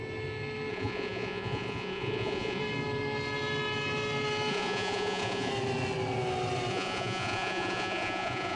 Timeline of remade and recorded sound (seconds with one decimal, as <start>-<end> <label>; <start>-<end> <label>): 0.0-0.7 recorded; 0.7-2.6 remade; 2.6-4.5 recorded; 4.5-5.5 remade; 5.5-6.7 recorded; 6.7-8.6 remade

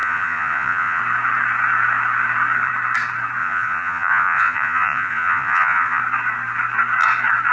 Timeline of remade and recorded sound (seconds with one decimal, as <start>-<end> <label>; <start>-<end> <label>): 0.0-1.0 remade; 1.0-3.4 recorded; 3.4-6.0 remade; 6.0-7.5 recorded

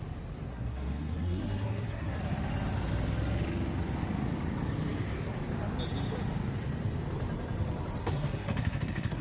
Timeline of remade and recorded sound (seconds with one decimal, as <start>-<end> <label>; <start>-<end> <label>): 0.0-0.5 recorded; 0.5-2.2 remade; 2.2-8.0 recorded; 8.0-9.2 remade

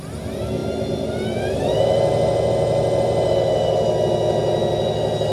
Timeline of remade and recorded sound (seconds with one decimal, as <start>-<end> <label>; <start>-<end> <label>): 0.0-5.3 recorded

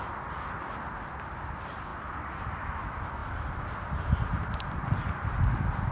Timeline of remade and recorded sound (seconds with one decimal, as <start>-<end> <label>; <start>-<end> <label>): 0.0-5.9 recorded

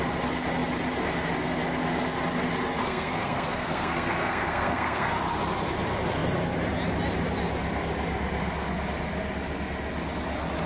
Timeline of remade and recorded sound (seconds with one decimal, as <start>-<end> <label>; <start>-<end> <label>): 0.0-2.8 recorded; 2.8-5.1 remade; 5.1-10.7 recorded